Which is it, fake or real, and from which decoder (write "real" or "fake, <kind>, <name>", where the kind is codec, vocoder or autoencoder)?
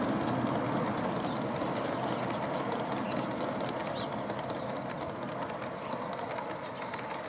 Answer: real